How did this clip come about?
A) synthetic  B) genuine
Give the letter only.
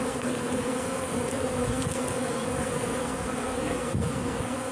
A